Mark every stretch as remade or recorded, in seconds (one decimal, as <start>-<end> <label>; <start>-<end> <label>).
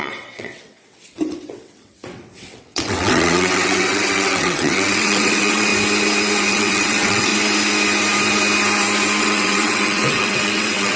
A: 0.0-5.7 remade; 5.7-6.5 recorded; 6.5-7.3 remade; 7.3-9.2 recorded; 9.2-11.0 remade